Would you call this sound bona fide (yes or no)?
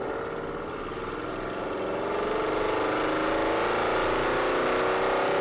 yes